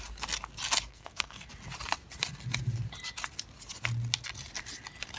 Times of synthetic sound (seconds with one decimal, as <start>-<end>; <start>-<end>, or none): 0.9-1.5